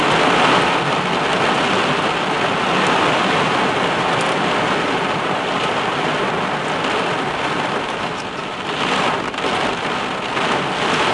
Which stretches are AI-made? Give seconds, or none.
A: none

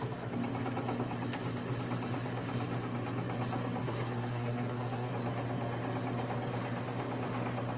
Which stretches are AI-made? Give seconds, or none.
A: 3.8-5.1 (codec, SNAC)

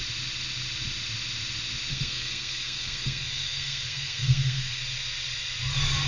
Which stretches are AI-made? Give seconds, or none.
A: 1.9-4.8 (codec, SNAC)

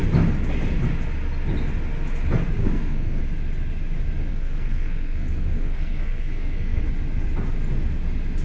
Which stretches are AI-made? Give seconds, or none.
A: 2.6-3.2 (codec, SNAC); 4.3-6.8

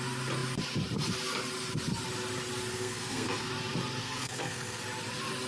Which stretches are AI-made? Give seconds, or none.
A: 2.7-3.5 (codec, SNAC); 4.0-4.8